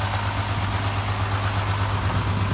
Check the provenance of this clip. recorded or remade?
recorded